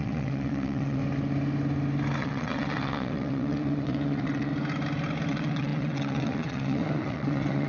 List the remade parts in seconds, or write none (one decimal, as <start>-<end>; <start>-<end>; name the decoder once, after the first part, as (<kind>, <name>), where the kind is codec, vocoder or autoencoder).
0.0-1.0 (vocoder, WaveNeXt); 2.2-4.5; 5.3-7.7